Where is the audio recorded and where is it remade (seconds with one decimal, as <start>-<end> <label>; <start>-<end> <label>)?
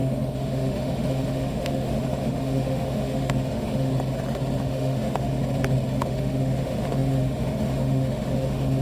0.0-3.9 remade; 3.9-4.6 recorded; 4.6-5.4 remade; 5.4-5.9 recorded; 5.9-8.8 remade